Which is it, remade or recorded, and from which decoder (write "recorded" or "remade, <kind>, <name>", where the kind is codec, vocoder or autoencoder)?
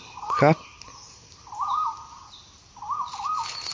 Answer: recorded